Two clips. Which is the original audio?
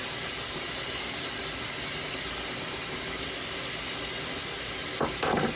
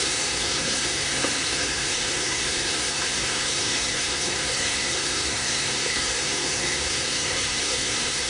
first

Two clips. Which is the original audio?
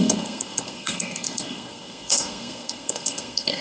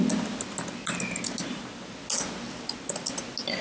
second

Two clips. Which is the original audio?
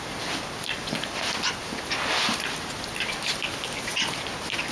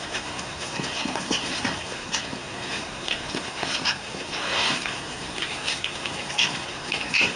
first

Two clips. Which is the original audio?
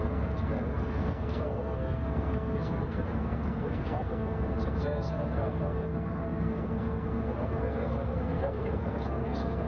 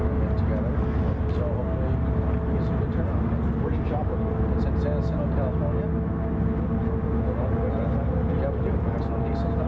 second